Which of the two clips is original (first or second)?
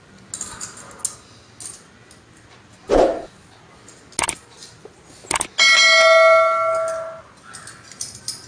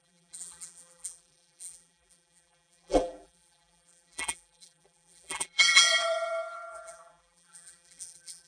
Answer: first